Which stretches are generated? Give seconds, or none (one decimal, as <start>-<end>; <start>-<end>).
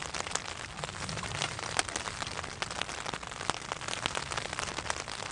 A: none